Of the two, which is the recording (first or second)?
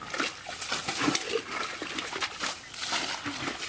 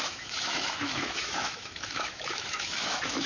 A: first